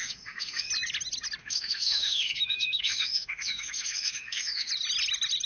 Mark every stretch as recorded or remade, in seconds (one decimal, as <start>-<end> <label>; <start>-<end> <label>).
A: 0.0-0.7 remade; 0.7-1.4 recorded; 1.4-4.7 remade; 4.7-5.5 recorded